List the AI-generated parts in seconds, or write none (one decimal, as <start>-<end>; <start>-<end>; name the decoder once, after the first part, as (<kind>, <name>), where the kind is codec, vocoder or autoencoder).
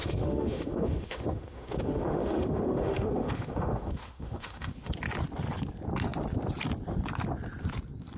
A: 0.0-4.9 (autoencoder, DAC-VAE)